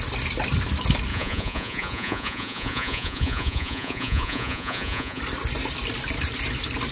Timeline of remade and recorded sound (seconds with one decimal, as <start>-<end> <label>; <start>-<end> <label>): 0.0-1.1 recorded; 1.1-5.2 remade; 5.2-6.9 recorded